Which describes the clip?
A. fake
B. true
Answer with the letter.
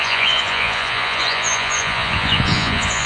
A